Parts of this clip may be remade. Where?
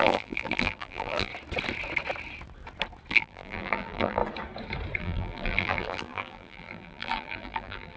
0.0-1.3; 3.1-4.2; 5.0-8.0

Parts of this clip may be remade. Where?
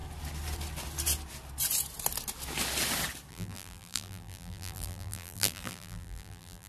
3.3-6.7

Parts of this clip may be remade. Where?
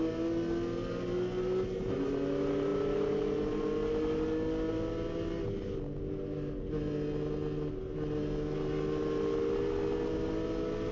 none